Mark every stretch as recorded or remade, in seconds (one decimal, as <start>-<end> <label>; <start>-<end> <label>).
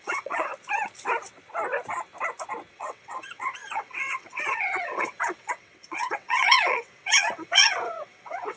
0.0-0.5 remade; 0.5-2.7 recorded; 2.7-8.6 remade